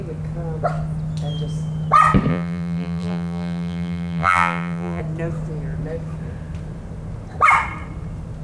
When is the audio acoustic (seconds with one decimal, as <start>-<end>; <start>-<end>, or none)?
0.0-2.3; 5.0-8.4